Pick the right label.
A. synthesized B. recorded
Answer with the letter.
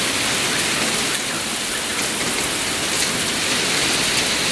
B